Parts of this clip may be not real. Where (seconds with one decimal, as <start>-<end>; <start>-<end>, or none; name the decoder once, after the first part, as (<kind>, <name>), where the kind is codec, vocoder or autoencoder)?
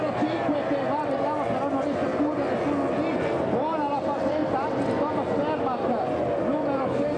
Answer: 4.4-4.9 (vocoder, BigVGAN v2)